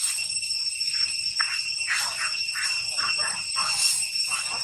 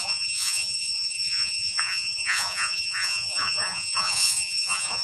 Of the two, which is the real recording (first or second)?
first